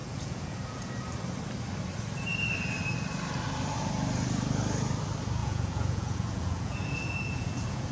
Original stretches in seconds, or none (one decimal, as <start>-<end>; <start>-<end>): 0.9-5.4